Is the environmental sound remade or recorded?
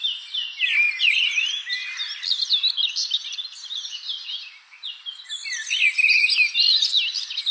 recorded